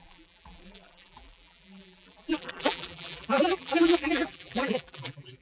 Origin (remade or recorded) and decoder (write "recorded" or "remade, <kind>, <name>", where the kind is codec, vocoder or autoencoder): remade, vocoder, BigVGAN v2